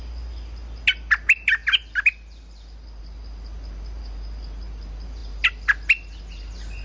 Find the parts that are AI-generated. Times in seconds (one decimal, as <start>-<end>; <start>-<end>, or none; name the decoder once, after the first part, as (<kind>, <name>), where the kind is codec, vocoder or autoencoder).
none